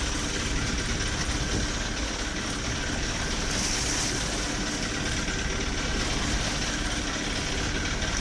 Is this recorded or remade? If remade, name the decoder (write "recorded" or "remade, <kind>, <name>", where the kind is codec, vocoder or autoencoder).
recorded